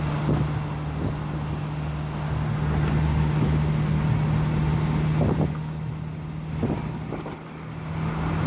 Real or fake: real